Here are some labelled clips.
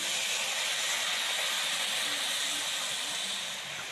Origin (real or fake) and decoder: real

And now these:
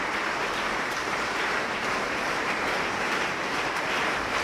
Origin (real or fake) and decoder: fake, vocoder, BigVGAN v2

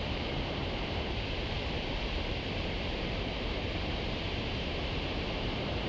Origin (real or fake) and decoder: fake, vocoder, BigVGAN v2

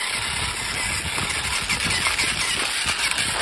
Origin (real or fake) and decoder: real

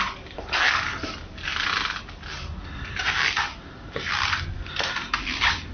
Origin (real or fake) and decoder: real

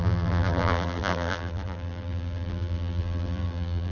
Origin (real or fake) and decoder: fake, vocoder, BigVGAN v2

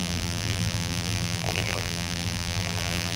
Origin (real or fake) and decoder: fake, vocoder, BigVGAN v2